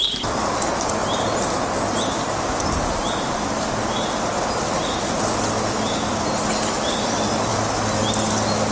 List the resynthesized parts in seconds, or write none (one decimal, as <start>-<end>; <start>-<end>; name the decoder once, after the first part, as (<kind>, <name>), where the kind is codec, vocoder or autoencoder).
none